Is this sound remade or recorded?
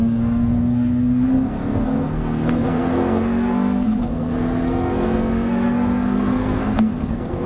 remade